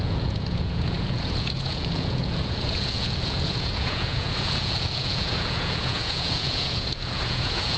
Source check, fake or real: fake